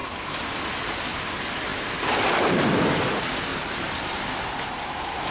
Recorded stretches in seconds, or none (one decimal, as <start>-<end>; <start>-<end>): 0.0-1.7; 3.0-3.5; 4.2-5.3

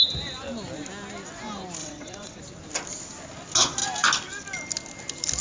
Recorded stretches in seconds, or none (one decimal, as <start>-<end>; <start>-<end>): 0.0-1.8; 2.4-5.4

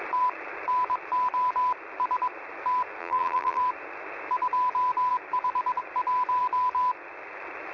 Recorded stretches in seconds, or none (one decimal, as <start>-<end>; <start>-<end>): 0.0-3.0; 3.6-7.7

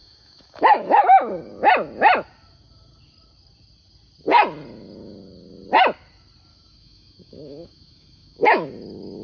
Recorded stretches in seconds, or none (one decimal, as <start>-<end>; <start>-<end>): 1.0-6.5; 8.7-9.2